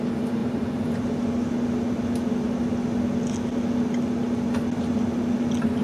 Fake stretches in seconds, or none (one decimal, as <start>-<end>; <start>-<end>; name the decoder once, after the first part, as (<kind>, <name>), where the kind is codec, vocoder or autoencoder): 0.4-1.1 (vocoder, BigVGAN v2)